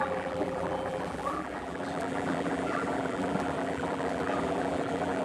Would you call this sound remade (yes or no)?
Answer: yes